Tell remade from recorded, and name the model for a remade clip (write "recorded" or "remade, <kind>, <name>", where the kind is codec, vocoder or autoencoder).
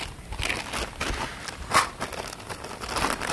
recorded